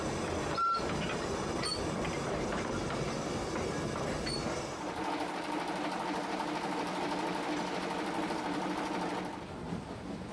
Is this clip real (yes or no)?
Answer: yes